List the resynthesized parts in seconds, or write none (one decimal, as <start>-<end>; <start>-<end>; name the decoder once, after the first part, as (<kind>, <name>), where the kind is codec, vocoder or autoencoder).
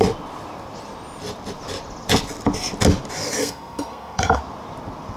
3.4-4.4 (codec, SNAC)